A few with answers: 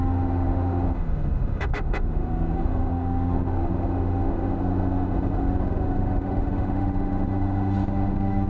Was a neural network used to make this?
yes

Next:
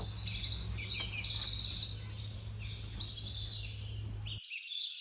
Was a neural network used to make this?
no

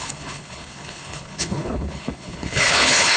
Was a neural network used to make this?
yes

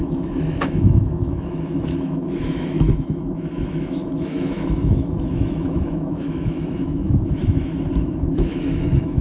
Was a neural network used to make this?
yes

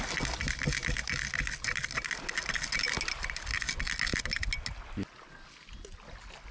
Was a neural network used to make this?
no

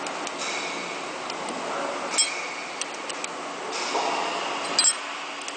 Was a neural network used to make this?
no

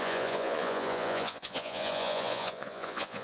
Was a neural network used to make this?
yes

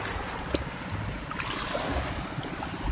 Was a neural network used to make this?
no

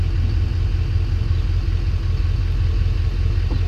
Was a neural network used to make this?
no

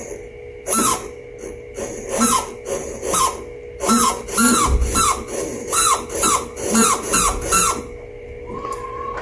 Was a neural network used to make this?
no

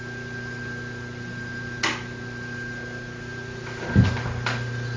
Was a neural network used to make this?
no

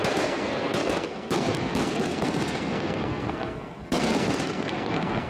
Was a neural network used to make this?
yes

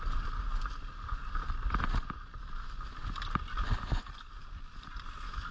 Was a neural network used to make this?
no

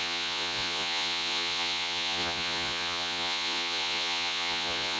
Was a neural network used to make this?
yes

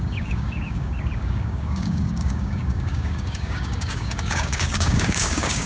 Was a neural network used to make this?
yes